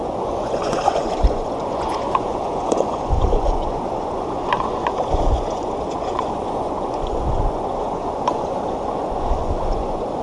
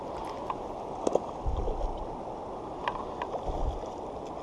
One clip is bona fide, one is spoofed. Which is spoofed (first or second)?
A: first